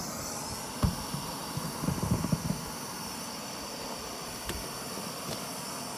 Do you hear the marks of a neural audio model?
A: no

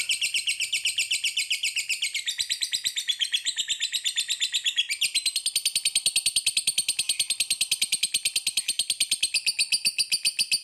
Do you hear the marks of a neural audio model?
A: no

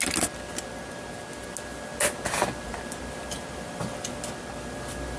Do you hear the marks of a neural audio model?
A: no